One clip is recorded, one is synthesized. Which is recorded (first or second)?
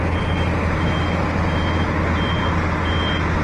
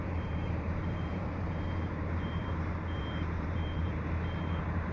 first